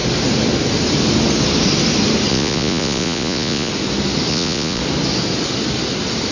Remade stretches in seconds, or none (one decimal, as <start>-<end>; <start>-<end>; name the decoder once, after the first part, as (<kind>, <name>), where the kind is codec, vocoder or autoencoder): 2.3-3.7 (vocoder, Vocos); 4.3-4.8